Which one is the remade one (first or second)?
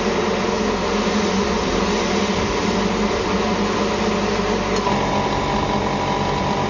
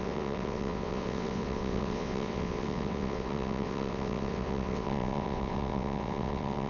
second